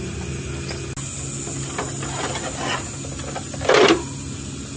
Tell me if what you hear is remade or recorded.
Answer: recorded